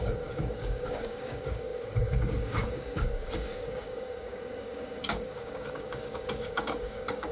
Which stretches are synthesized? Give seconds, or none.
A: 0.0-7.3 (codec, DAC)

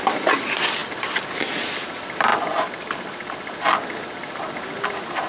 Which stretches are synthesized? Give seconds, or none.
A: none

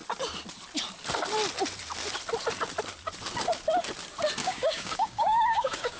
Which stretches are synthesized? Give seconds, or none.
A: 4.4-6.0 (codec, DAC)

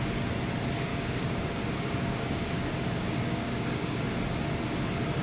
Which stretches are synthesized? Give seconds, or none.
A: 0.9-4.0 (codec, DAC)

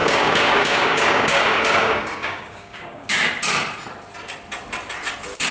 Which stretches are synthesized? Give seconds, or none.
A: 0.0-3.3 (codec, DAC)

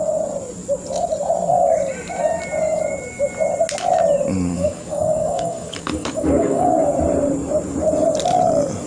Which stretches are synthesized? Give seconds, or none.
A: 4.5-6.7 (codec, DAC)

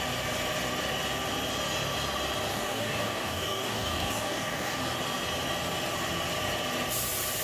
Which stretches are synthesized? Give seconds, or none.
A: 2.5-4.8 (codec, DAC)